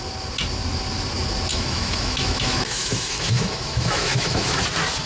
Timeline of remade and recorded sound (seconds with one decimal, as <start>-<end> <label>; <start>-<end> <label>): 0.0-1.5 recorded; 1.5-4.6 remade; 4.6-5.1 recorded